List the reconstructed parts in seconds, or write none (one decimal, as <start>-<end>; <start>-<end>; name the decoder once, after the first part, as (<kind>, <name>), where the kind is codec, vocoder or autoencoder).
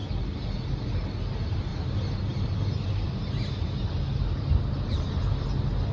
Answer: none